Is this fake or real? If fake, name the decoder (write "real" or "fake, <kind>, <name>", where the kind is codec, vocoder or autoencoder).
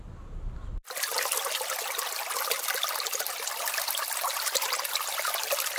real